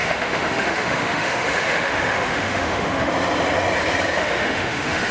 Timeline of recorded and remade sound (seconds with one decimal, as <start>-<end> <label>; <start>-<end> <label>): 0.0-3.1 remade; 3.1-4.2 recorded; 4.2-5.1 remade